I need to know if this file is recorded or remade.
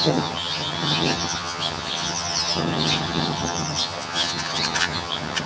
remade